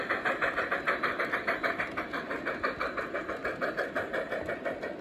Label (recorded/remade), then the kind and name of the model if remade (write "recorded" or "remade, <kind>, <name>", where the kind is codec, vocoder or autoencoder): recorded